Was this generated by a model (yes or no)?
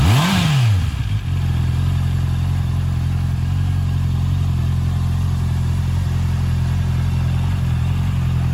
no